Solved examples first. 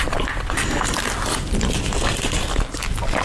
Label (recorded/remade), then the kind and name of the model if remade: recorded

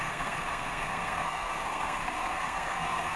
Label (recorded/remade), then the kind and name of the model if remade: remade, codec, SNAC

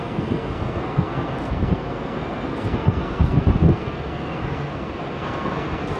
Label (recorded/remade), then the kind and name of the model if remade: remade, codec, SNAC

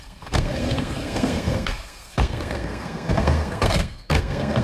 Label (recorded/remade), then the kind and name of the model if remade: remade, codec, SNAC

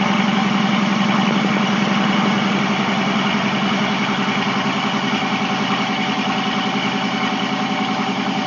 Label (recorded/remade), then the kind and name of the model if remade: recorded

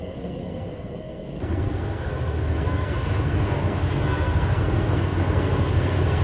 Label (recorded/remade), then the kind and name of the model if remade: remade, codec, SNAC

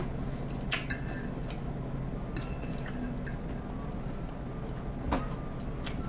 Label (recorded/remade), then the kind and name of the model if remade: recorded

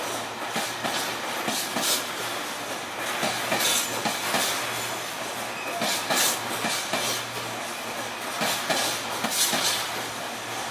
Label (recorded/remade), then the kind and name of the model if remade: recorded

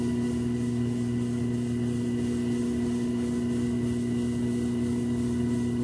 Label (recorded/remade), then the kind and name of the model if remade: recorded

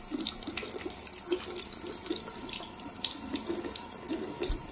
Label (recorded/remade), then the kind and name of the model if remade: recorded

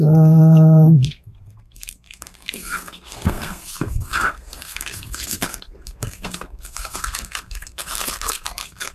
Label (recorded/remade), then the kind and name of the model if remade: remade, codec, SNAC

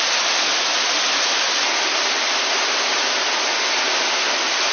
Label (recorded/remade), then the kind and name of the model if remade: recorded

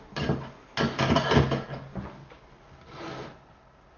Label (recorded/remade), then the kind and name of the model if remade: recorded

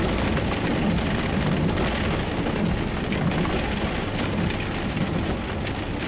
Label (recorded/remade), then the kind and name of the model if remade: recorded